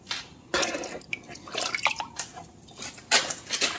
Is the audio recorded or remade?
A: recorded